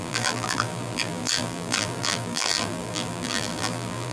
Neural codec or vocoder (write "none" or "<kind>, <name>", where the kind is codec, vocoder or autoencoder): vocoder, BigVGAN v2